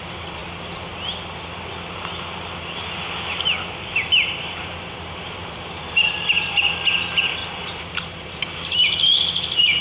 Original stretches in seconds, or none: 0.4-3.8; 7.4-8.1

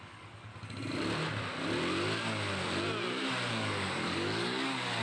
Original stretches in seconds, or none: 0.5-3.5